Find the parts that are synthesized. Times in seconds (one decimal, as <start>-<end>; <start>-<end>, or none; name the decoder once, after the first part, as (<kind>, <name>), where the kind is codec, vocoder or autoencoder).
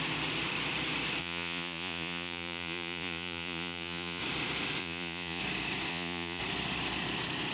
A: 1.2-4.2 (vocoder, Vocos); 4.8-5.4; 5.9-6.4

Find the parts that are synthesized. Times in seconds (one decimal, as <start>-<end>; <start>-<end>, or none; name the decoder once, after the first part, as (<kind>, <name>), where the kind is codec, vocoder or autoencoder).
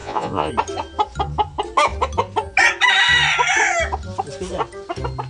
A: 0.0-0.5 (vocoder, Vocos)